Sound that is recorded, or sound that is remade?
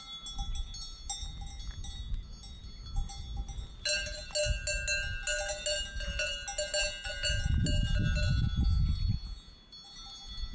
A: recorded